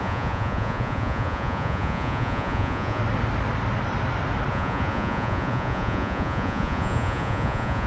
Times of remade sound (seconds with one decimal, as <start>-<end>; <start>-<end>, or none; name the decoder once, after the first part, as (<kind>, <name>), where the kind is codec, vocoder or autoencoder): 0.0-3.0 (vocoder, Vocos); 4.5-7.9